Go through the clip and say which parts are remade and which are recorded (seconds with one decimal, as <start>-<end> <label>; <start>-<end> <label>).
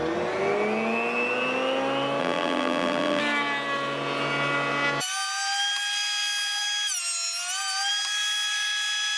0.0-2.2 recorded; 2.2-3.2 remade; 3.2-9.2 recorded